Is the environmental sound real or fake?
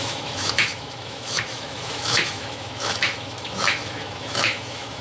fake